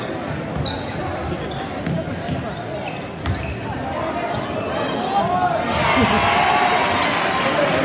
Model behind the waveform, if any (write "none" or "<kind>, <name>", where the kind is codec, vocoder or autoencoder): none